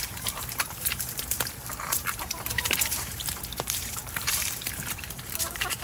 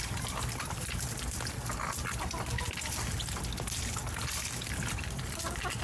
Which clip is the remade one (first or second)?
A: first